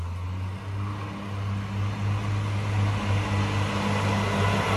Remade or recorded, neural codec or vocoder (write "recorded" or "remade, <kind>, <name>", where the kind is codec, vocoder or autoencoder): recorded